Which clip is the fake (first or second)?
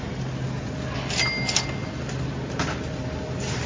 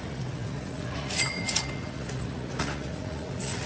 second